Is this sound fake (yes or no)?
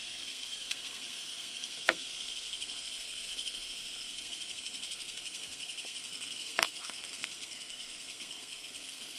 yes